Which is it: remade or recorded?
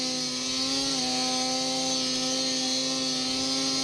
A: recorded